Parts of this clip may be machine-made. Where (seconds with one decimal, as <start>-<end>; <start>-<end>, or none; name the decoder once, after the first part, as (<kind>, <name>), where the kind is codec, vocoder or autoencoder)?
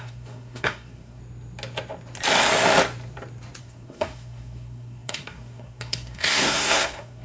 0.0-1.2 (codec, SNAC); 3.6-7.2